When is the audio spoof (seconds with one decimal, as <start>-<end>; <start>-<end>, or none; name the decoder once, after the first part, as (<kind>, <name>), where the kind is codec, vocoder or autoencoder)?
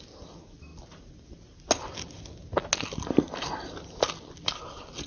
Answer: none